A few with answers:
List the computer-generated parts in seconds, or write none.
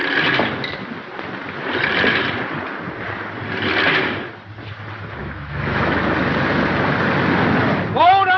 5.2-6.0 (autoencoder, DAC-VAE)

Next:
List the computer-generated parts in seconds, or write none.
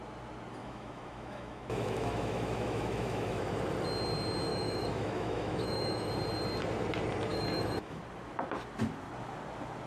0.6-3.6 (autoencoder, DAC-VAE); 4.5-6.1; 7.3-8.0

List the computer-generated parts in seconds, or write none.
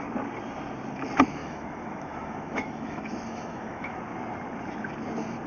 1.4-4.0 (autoencoder, DAC-VAE)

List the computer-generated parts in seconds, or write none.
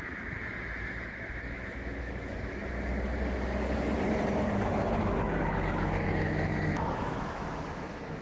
0.0-2.6 (autoencoder, DAC-VAE); 5.0-8.2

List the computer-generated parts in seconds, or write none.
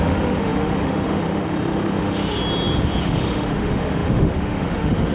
0.0-2.4 (autoencoder, DAC-VAE); 3.0-5.1